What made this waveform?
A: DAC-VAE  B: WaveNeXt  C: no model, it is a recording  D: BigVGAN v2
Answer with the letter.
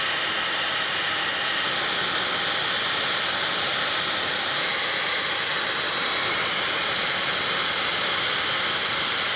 C